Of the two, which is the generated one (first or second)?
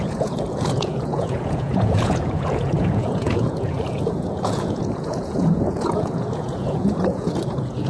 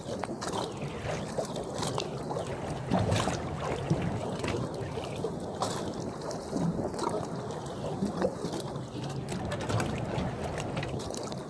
first